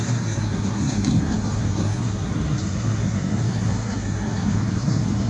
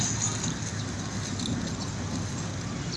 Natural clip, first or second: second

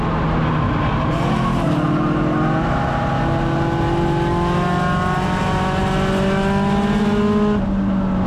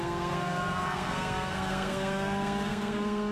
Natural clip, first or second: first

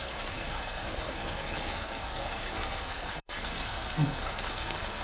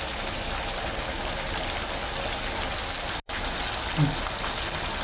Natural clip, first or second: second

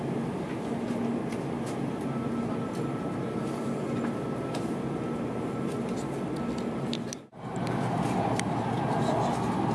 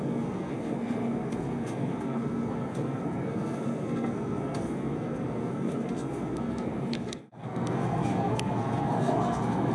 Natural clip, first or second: first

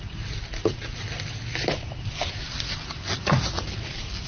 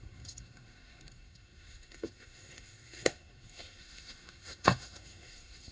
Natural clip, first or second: first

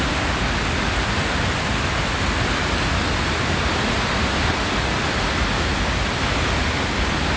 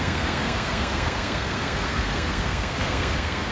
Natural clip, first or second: first